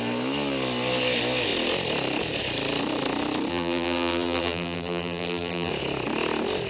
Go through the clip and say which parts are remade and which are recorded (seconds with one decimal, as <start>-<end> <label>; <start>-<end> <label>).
0.0-3.5 recorded; 3.5-5.7 remade; 5.7-6.7 recorded